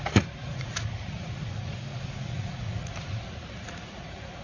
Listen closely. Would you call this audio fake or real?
fake